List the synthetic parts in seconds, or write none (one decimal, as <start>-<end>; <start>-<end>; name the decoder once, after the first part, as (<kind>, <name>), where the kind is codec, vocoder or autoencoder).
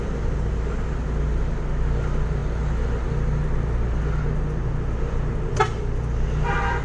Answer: none